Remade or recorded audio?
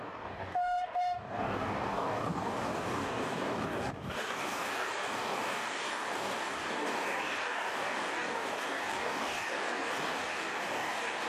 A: remade